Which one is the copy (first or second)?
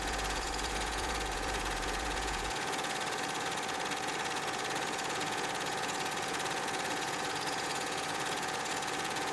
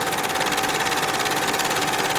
first